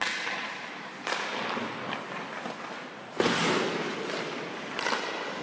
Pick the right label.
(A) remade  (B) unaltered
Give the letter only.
B